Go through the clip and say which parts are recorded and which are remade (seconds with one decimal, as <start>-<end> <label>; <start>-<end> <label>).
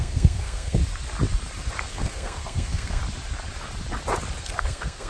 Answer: 0.0-0.8 remade; 0.8-1.9 recorded; 1.9-3.0 remade; 3.0-4.4 recorded; 4.4-5.1 remade